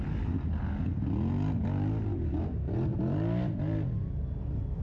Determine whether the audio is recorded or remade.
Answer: recorded